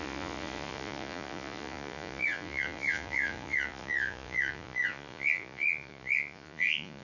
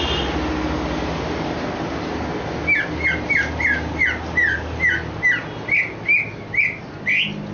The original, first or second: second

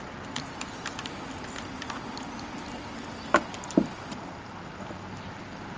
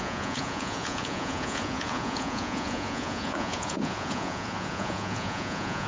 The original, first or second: first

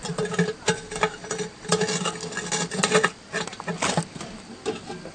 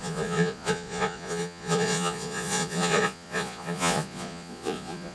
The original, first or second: first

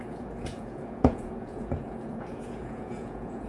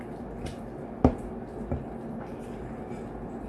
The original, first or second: second